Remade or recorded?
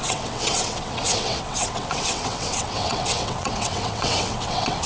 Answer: remade